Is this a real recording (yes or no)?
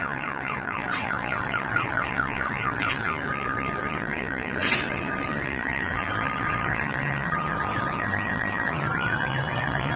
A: no